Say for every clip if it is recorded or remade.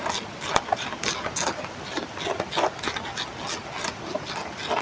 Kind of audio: recorded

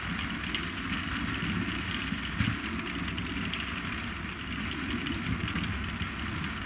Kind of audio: recorded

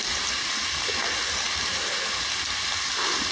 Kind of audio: recorded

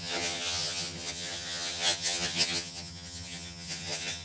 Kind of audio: remade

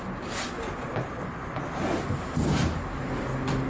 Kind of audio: recorded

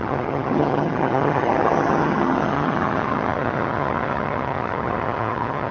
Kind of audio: remade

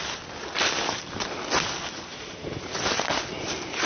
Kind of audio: recorded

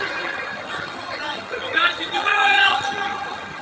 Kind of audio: remade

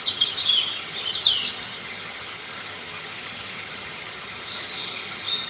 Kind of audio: remade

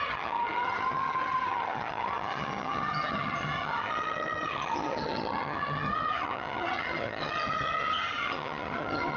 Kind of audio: remade